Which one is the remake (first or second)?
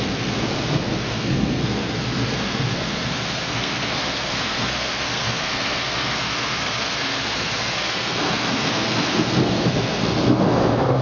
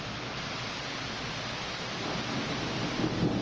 first